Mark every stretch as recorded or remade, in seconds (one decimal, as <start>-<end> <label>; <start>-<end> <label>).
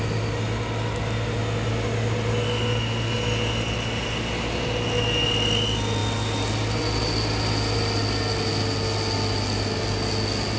0.0-10.6 recorded